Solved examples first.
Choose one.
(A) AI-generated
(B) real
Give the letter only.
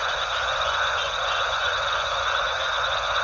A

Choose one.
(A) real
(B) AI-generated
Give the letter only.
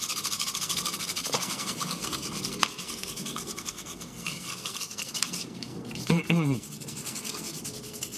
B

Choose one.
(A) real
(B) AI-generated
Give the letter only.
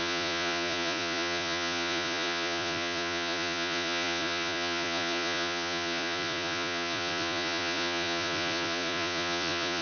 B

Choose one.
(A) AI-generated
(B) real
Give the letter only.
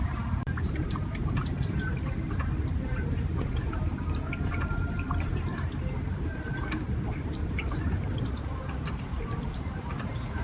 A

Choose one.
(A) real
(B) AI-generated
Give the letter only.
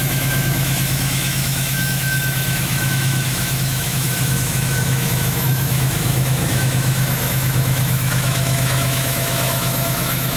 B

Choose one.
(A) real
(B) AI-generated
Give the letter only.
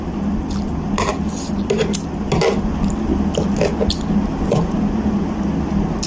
A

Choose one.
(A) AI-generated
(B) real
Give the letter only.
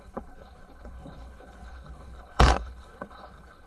A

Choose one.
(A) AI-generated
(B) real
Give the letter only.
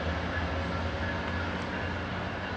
B